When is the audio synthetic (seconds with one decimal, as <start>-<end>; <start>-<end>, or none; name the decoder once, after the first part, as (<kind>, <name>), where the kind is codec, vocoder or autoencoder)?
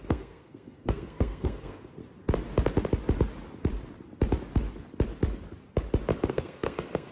0.0-2.0 (codec, SNAC); 6.3-7.1